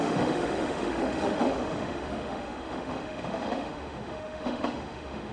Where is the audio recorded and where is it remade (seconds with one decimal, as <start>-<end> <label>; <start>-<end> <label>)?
0.0-5.3 remade